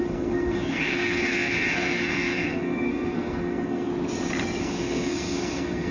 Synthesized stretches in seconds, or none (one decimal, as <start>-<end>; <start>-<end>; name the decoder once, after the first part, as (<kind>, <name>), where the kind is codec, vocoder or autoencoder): 0.0-3.9 (codec, SNAC); 4.6-5.9